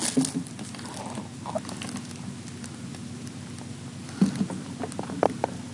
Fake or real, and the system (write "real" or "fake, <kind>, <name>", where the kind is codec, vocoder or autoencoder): real